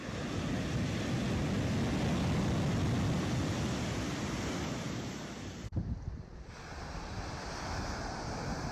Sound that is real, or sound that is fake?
real